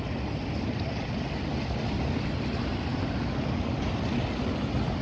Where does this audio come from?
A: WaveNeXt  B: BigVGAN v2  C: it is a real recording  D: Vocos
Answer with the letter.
C